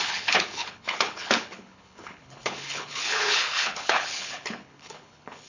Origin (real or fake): fake